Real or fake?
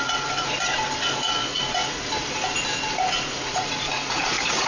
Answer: fake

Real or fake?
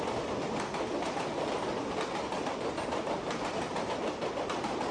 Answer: real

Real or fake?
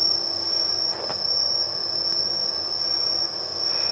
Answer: real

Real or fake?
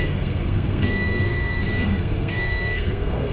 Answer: fake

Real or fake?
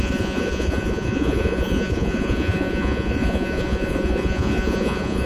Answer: fake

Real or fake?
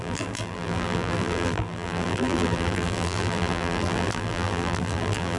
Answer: fake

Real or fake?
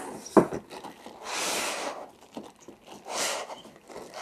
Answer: real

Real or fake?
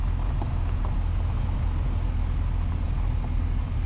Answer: real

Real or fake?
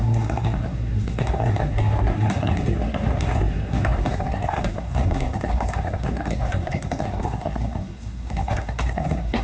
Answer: fake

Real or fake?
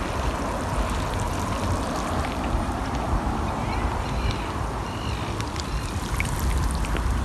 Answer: real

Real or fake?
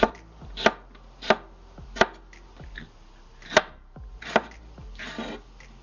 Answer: real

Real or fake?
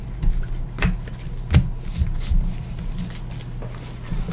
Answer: real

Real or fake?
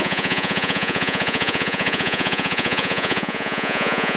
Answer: fake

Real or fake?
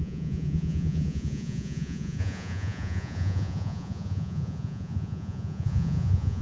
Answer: fake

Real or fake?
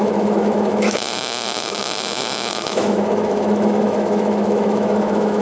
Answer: fake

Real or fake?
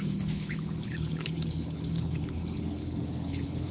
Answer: fake